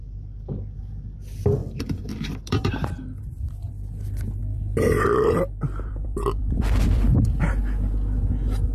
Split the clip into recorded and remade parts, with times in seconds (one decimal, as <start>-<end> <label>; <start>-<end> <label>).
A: 0.0-1.6 recorded; 1.6-2.7 remade; 2.7-4.4 recorded; 4.4-7.5 remade; 7.5-8.7 recorded